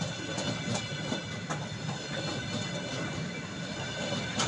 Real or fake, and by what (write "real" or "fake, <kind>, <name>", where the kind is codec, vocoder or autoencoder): real